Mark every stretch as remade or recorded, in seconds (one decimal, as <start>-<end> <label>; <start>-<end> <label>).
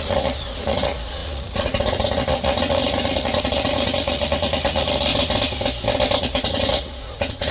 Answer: 0.0-5.1 remade; 5.1-6.2 recorded; 6.2-7.5 remade